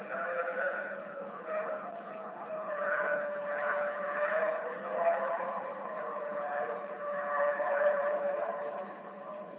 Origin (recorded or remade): remade